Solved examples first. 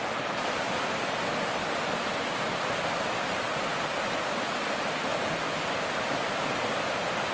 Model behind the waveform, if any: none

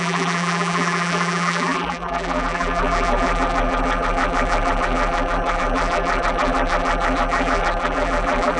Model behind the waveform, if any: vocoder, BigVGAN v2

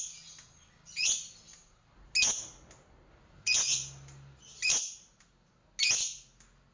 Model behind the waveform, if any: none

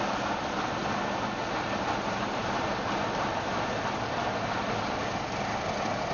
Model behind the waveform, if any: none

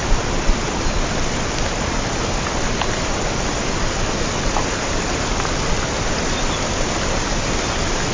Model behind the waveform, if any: none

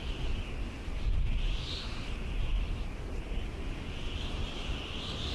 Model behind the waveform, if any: none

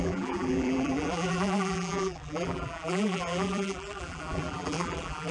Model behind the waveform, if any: vocoder, BigVGAN v2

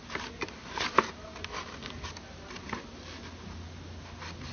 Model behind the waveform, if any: none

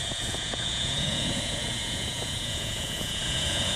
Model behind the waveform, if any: vocoder, Vocos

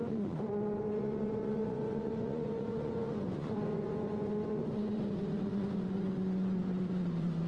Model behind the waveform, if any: vocoder, Vocos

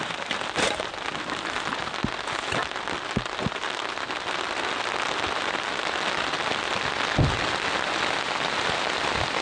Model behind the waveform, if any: none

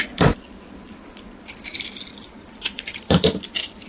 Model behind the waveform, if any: vocoder, BigVGAN v2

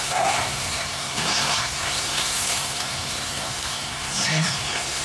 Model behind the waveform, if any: codec, SNAC